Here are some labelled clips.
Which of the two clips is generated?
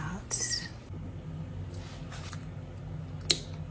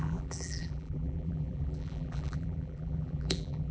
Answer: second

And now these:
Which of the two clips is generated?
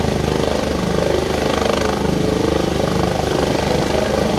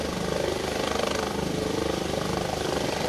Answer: second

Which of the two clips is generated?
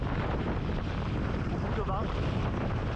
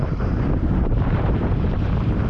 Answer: second